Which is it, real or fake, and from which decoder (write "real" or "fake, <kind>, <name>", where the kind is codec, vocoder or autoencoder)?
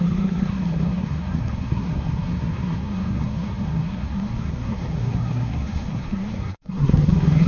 fake, codec, SNAC